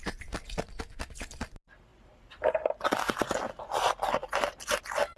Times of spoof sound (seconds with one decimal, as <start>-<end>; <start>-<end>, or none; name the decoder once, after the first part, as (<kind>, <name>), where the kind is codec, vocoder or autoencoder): none